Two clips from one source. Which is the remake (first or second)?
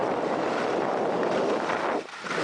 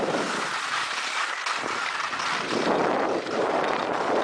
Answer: first